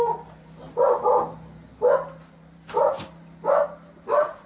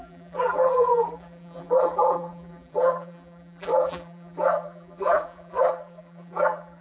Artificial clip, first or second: second